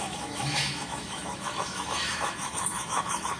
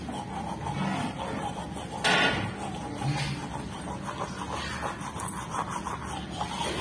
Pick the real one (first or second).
second